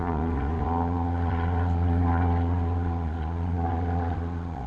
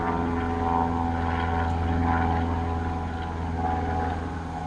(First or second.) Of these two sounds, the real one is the second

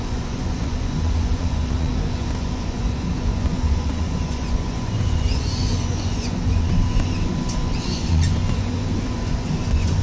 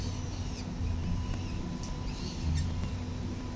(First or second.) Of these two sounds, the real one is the second